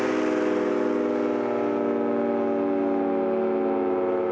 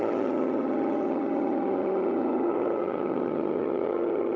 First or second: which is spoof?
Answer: second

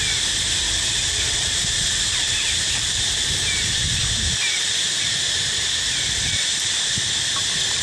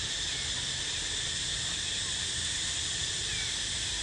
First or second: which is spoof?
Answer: first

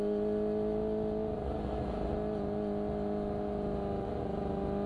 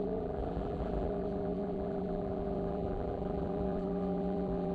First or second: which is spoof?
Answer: second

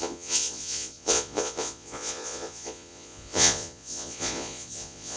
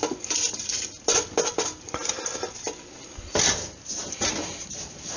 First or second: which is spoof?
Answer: first